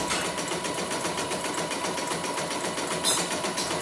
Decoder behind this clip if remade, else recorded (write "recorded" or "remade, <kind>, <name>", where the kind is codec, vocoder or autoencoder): remade, vocoder, BigVGAN v2